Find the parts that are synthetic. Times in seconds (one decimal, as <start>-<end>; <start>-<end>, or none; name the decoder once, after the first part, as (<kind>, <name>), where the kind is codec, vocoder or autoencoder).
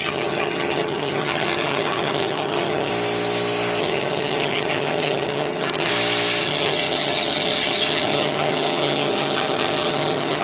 0.0-2.9 (vocoder, HiFi-GAN); 3.8-5.9; 6.4-10.4